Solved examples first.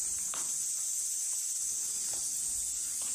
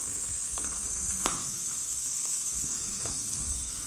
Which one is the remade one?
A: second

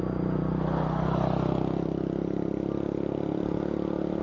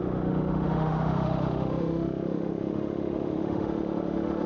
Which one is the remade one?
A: second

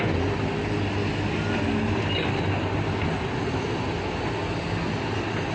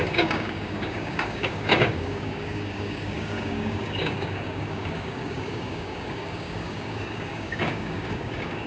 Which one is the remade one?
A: second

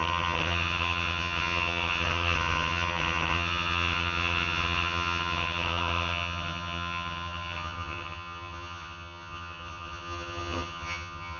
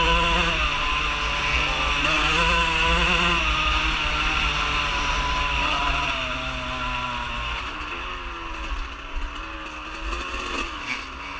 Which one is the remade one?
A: first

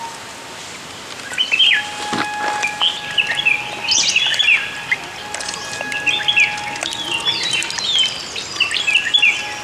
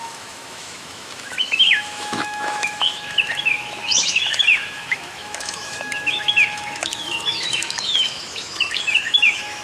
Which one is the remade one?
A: second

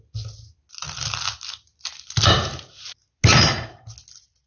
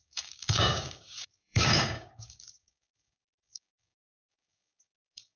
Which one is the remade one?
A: second